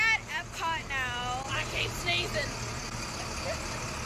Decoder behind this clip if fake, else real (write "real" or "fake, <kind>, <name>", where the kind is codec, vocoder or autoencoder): real